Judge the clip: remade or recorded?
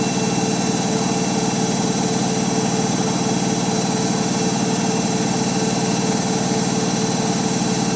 recorded